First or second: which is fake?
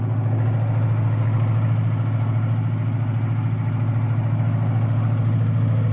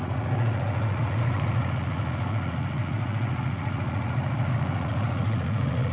second